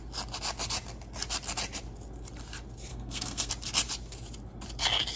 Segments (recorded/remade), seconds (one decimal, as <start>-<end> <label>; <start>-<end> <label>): 0.0-2.9 recorded; 2.9-3.5 remade; 3.5-5.2 recorded